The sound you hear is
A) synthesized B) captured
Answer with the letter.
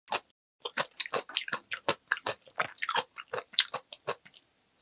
B